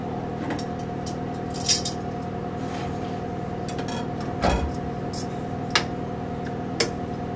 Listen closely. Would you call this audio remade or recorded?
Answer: recorded